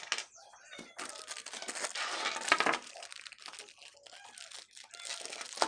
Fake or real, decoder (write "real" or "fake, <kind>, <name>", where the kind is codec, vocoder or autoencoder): real